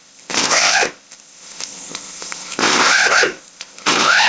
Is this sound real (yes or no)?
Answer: no